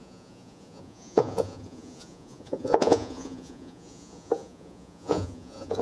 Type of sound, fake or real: fake